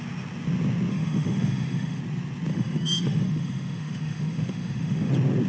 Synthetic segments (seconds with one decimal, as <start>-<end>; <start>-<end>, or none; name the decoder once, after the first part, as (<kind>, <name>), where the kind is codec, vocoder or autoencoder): 0.9-2.0 (autoencoder, DAC-VAE); 2.5-5.1